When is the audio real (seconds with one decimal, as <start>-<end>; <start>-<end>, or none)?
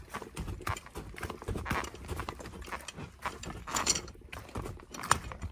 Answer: 0.0-3.6; 4.1-5.5